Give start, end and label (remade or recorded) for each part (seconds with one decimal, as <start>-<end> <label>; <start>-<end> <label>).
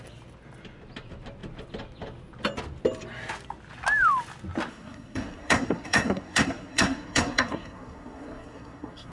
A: 0.0-4.7 recorded; 4.7-9.1 remade